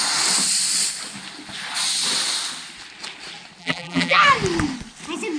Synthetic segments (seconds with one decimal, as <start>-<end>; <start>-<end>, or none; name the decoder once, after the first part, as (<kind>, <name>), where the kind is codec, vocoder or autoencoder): 3.6-4.2 (vocoder, BigVGAN v2)